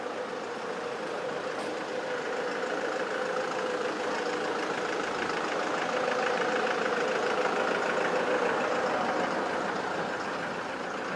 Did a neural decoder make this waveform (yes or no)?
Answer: no